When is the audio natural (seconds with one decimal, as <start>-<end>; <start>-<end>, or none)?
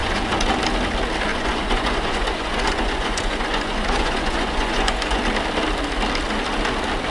0.5-1.3; 5.2-7.1